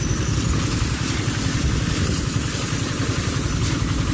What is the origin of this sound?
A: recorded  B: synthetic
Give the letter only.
A